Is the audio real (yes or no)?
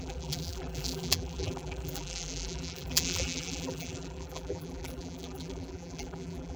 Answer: no